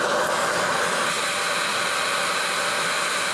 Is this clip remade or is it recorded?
recorded